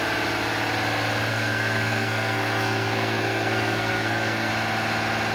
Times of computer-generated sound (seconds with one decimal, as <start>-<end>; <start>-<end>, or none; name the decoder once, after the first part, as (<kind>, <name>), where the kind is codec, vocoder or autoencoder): 1.3-4.5 (codec, SNAC)